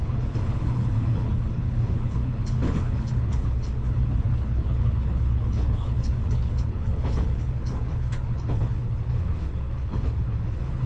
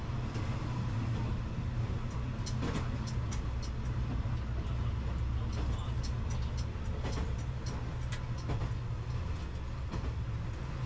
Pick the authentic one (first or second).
second